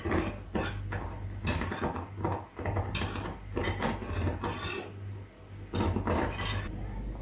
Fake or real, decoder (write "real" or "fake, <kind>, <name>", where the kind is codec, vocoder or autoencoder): real